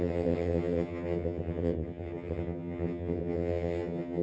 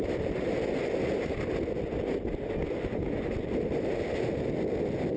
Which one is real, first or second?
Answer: second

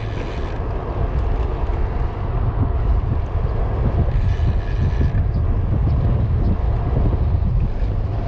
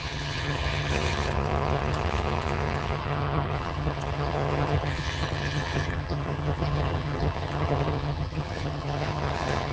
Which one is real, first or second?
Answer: first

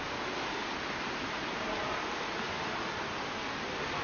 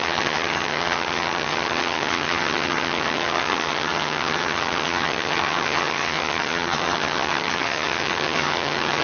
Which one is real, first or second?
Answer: first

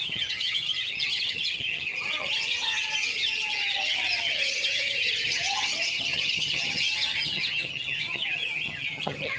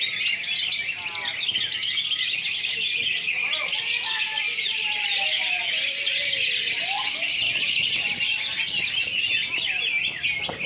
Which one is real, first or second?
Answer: second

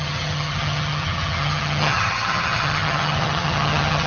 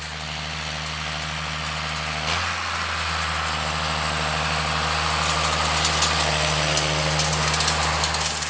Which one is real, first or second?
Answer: second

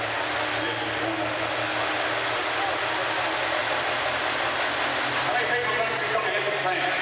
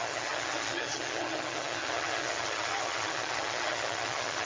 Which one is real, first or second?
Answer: first